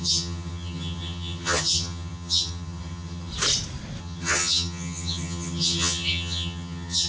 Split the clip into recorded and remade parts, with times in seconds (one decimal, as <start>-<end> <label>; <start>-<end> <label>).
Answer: 0.0-3.3 remade; 3.3-4.0 recorded; 4.0-7.1 remade